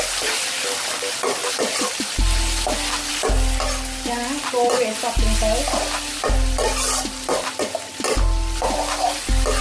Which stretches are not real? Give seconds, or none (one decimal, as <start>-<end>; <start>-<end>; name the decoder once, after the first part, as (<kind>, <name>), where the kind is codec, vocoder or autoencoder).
none